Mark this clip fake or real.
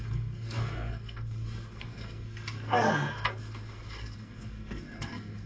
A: fake